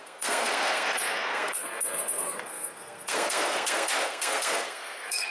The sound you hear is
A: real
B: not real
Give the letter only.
B